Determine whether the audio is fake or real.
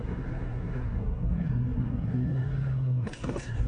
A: fake